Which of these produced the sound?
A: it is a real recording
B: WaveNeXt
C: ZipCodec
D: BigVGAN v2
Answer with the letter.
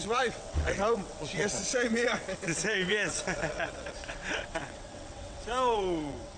B